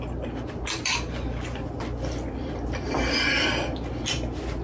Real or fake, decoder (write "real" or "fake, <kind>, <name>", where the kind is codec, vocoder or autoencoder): real